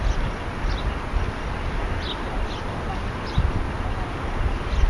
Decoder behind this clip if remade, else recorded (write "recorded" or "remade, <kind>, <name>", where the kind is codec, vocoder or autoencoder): recorded